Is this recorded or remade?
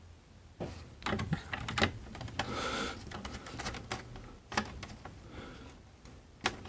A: recorded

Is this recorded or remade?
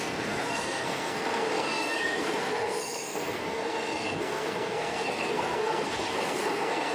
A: remade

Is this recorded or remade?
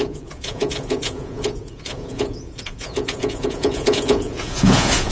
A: remade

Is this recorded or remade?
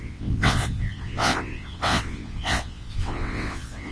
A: remade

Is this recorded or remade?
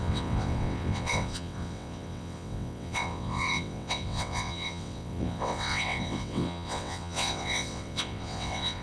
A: remade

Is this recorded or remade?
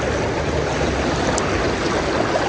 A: recorded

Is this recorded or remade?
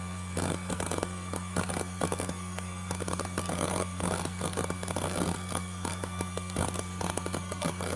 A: remade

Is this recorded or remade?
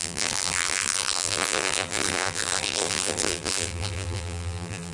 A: remade